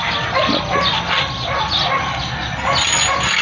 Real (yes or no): yes